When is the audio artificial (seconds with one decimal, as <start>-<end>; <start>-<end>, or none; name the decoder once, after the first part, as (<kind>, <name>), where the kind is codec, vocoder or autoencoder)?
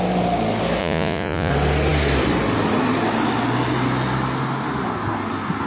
0.8-1.5 (vocoder, Vocos)